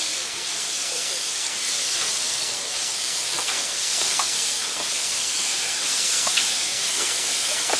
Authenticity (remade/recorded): remade